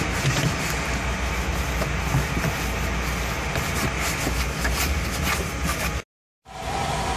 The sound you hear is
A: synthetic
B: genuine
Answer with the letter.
B